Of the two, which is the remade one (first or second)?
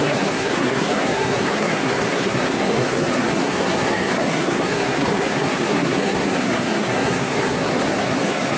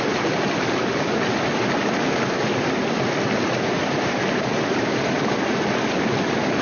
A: first